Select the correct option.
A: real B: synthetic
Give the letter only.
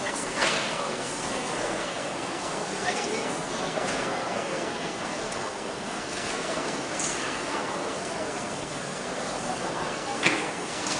B